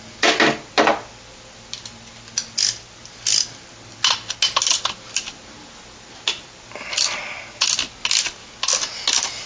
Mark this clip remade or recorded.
recorded